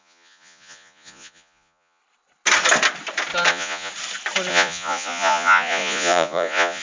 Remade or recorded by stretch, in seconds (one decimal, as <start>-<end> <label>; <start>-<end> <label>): 0.0-2.0 remade; 2.0-3.5 recorded; 3.5-3.9 remade; 3.9-4.5 recorded; 4.5-6.8 remade